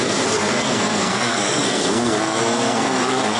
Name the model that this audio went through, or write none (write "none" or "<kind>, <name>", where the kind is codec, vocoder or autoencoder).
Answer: codec, SNAC